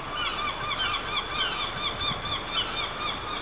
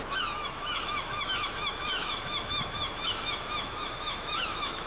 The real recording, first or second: first